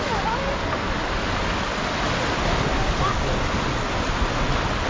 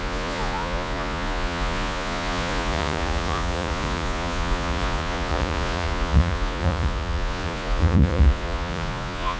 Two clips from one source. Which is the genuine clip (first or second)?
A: first